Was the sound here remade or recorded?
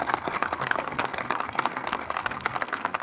remade